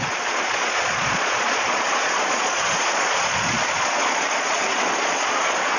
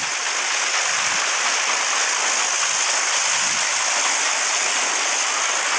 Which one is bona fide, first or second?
second